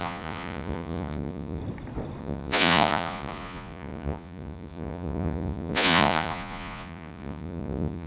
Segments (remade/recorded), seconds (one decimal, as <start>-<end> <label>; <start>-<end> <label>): 0.0-1.6 remade; 1.6-2.2 recorded; 2.2-8.1 remade